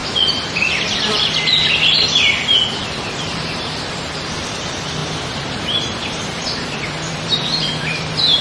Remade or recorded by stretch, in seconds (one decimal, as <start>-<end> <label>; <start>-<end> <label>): 0.0-2.9 recorded; 2.9-8.4 remade

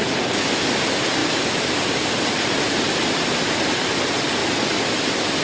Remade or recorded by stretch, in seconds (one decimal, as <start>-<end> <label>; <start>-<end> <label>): 0.0-1.2 recorded; 1.2-2.6 remade; 2.6-5.4 recorded

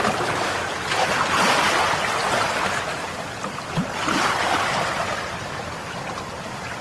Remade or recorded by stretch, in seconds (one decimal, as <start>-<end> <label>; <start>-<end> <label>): 0.0-6.8 recorded

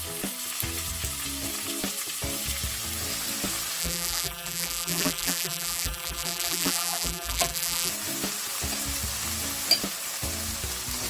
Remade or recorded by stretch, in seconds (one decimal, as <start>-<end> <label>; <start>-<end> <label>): 0.0-3.8 recorded; 3.8-7.9 remade; 7.9-11.1 recorded